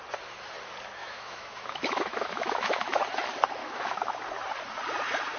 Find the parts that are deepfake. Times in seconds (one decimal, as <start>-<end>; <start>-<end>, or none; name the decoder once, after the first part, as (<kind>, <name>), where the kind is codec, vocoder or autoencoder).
1.0-3.0 (autoencoder, DAC-VAE); 3.6-4.2